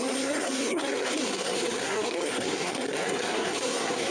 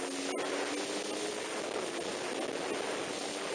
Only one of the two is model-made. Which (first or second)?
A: first